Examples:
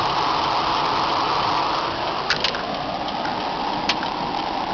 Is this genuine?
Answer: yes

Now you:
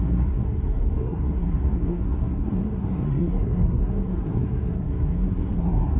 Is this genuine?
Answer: no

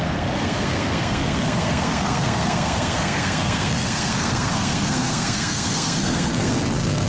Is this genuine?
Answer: no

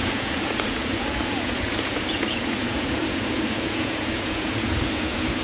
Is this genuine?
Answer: no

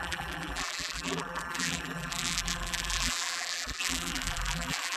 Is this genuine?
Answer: no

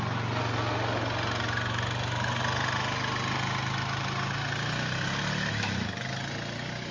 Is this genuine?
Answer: yes